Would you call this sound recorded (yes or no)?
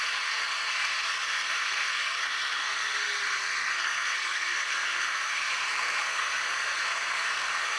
no